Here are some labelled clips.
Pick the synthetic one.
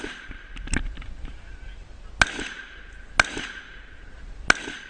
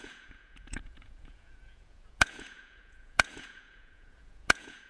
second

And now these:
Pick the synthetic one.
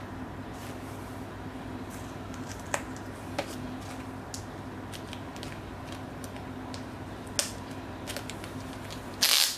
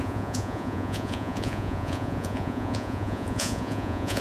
second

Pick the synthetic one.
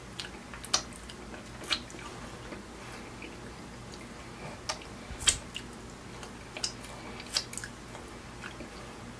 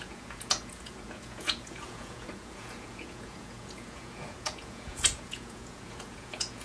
second